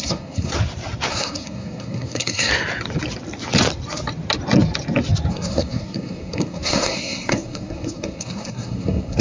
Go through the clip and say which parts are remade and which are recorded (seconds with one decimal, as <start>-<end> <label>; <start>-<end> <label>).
0.0-0.5 remade; 0.5-1.1 recorded; 1.1-2.5 remade; 2.5-5.3 recorded; 5.3-9.2 remade